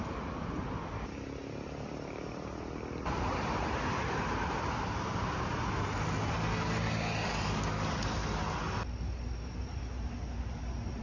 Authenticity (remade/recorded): recorded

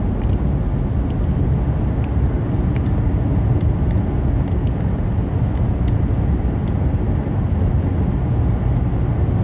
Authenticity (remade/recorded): recorded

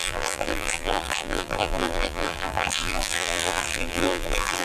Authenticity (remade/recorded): remade